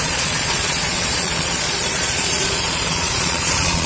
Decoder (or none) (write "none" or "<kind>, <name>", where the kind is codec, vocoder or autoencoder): vocoder, Vocos